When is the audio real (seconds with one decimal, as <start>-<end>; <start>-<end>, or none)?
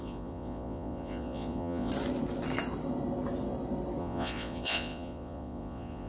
1.9-4.0